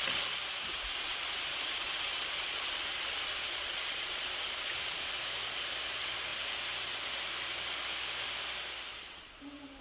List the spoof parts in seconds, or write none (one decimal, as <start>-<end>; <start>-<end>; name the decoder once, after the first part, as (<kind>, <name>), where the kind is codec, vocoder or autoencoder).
0.9-5.1 (vocoder, Vocos); 8.9-9.4